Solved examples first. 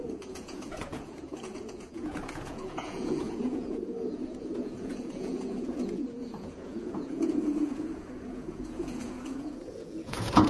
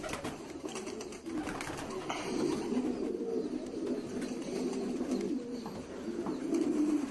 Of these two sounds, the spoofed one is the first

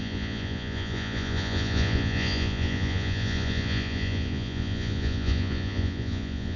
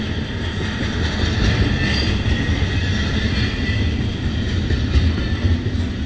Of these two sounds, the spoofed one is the first